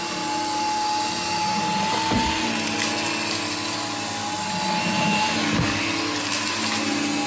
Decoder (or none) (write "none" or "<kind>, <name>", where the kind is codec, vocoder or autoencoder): none